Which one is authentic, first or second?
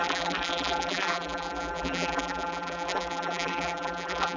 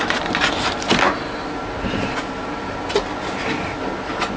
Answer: second